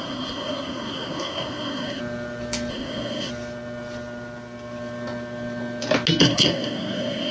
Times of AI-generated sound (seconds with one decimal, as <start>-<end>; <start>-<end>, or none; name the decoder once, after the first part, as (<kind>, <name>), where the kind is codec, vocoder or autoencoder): 0.0-2.0 (codec, SNAC); 2.7-3.3; 6.2-7.3